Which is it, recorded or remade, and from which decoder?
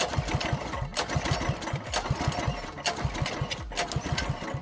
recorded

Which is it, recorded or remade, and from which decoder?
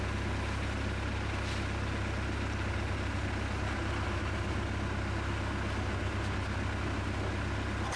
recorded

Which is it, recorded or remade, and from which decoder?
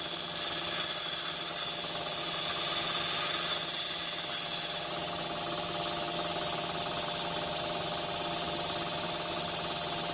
recorded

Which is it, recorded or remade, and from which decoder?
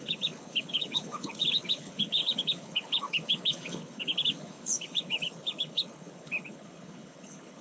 remade, codec, HILCodec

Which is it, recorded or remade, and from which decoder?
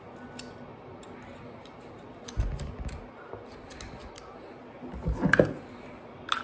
recorded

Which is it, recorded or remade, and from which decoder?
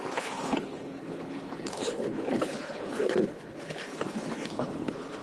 remade, codec, HILCodec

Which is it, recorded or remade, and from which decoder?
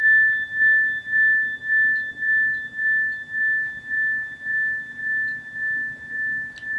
recorded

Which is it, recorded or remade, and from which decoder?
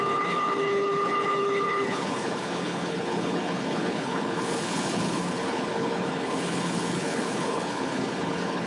remade, codec, HILCodec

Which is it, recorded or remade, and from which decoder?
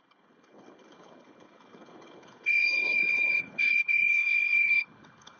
remade, codec, HILCodec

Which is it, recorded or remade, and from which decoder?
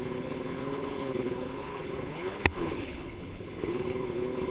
remade, codec, HILCodec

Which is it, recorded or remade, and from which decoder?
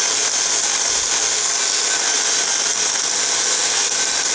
recorded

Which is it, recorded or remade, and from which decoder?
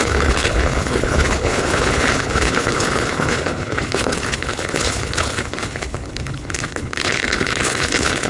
remade, codec, HILCodec